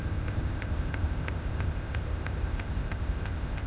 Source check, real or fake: fake